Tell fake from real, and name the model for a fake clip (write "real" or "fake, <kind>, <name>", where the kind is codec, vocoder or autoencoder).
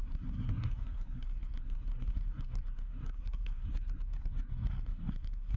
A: fake, codec, SNAC